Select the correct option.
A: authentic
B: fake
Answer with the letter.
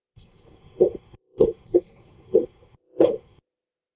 B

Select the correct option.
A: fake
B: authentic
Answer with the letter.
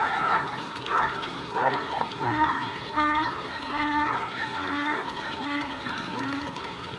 A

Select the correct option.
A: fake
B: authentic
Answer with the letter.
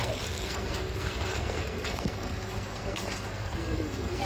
A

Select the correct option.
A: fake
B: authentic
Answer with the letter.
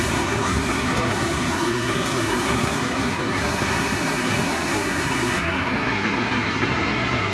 A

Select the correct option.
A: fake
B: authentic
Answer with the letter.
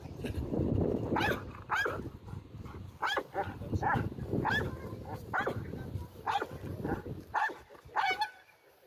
B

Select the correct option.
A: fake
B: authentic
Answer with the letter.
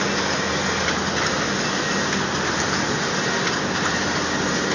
B